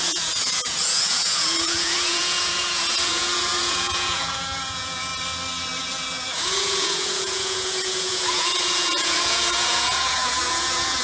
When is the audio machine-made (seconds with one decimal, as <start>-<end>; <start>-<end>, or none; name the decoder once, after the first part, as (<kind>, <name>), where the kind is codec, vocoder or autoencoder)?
0.0-5.1 (vocoder, Vocos); 5.8-11.0